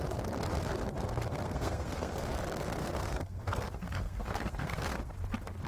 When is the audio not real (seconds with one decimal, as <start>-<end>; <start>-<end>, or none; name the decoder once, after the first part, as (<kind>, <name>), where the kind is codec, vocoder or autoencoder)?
1.3-2.2 (codec, SNAC); 2.8-5.1

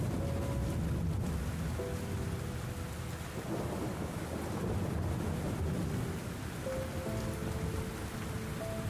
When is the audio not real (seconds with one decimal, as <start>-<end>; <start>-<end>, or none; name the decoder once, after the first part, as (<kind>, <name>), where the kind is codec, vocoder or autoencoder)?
3.9-4.4 (codec, DAC)

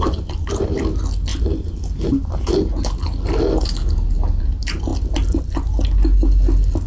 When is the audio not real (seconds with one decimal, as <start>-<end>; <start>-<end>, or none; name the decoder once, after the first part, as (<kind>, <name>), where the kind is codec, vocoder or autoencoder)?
none

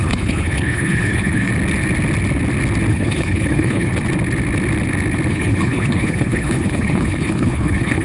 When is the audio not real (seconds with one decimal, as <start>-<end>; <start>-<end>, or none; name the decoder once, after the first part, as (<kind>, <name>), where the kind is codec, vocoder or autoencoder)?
0.0-1.5 (codec, HILCodec); 2.9-3.9; 5.3-8.0

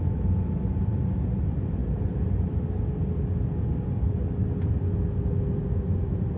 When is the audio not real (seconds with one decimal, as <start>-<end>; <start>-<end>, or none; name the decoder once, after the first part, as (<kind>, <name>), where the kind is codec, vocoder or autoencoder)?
none